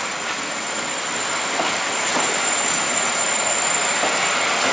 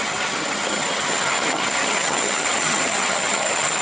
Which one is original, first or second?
first